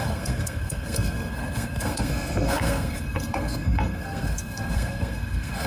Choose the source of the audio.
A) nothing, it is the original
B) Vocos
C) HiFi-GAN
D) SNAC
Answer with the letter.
D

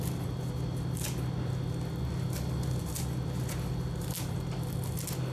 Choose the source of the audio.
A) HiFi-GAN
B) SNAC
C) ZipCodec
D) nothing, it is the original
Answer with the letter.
D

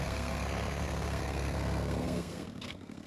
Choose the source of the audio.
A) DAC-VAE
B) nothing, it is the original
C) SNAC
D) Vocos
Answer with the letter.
C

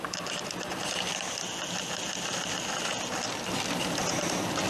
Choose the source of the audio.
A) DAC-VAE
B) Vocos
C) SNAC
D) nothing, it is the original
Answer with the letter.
D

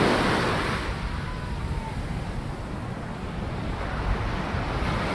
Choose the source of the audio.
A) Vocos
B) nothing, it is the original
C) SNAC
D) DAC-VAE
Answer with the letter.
B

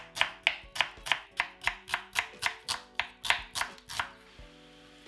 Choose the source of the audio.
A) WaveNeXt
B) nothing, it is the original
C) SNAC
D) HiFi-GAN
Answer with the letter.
B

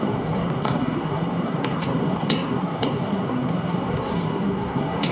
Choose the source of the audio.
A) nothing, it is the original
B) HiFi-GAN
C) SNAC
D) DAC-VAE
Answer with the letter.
C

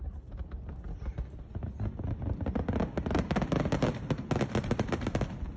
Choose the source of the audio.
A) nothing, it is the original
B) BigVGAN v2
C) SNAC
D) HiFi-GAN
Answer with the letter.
A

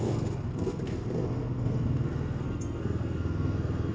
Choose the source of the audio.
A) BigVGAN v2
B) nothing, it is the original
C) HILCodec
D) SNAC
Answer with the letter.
D